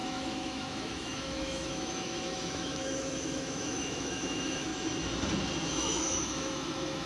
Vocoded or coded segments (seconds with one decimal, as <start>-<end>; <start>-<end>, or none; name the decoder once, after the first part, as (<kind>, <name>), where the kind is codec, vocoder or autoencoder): 0.0-4.7 (autoencoder, DAC-VAE); 5.7-7.1